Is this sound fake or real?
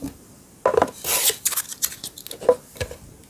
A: real